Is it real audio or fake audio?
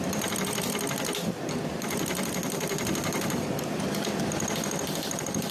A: fake